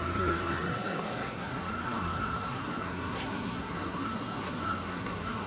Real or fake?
fake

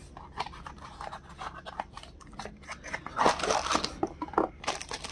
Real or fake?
real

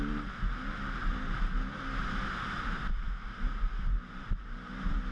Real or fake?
real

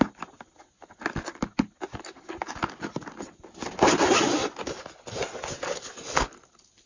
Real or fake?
real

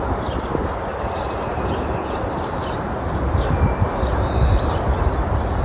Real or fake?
fake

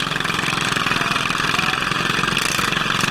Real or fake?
real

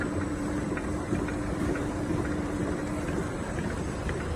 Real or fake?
fake